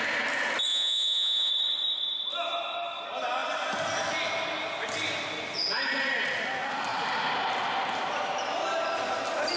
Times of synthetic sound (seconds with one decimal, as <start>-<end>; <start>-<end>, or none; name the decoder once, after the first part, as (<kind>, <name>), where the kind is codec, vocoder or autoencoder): 0.7-1.5 (vocoder, Vocos)